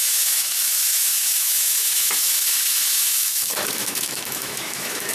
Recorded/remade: remade